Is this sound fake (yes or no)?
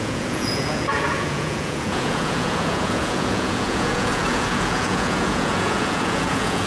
yes